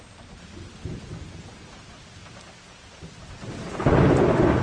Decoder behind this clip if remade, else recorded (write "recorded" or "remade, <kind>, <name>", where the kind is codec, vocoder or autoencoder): recorded